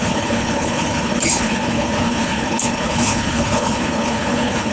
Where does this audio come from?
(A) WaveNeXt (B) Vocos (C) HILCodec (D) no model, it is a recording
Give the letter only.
C